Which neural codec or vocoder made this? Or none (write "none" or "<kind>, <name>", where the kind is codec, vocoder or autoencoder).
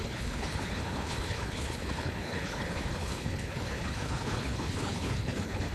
codec, HILCodec